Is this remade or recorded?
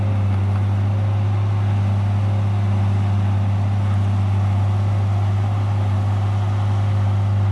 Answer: recorded